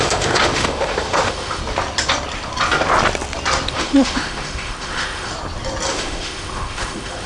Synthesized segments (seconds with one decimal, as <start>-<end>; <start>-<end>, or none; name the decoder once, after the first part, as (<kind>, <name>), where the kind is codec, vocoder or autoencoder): 0.0-1.6 (autoencoder, DAC-VAE); 3.7-5.3; 5.9-7.3